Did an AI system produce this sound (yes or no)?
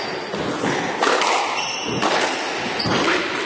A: no